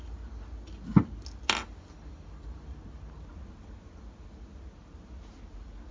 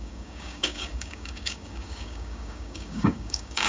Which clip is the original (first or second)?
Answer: first